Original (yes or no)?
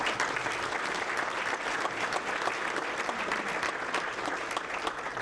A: yes